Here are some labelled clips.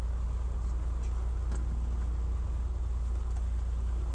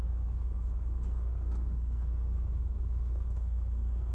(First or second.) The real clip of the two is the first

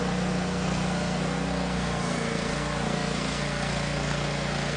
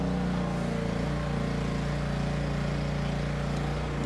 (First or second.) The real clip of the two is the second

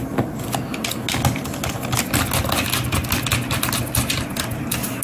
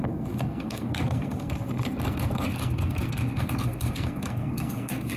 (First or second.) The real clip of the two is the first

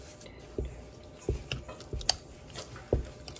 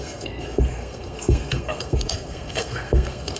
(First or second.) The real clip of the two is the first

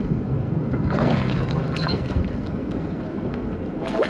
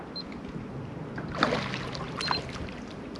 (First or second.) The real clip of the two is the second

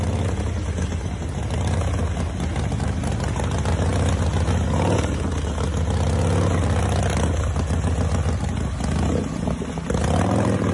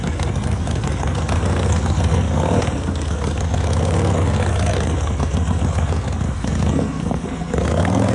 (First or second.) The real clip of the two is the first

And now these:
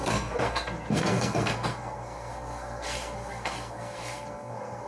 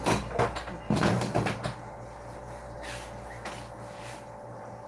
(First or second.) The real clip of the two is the second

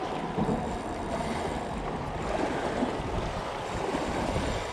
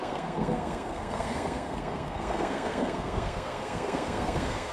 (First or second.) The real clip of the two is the first